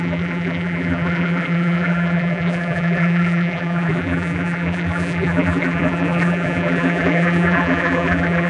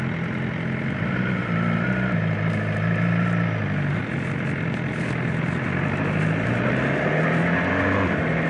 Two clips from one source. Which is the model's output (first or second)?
first